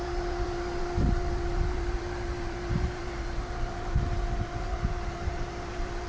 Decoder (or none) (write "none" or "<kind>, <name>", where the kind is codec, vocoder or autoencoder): vocoder, BigVGAN v2